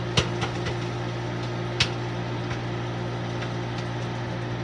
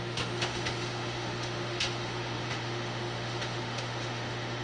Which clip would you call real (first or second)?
first